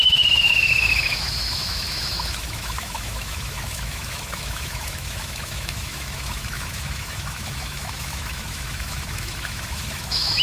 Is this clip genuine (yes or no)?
no